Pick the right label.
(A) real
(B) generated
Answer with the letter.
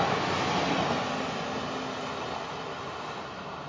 A